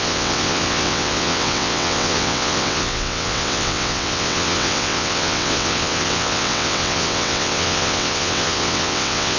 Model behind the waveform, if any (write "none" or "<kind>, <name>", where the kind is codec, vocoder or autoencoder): vocoder, WaveNeXt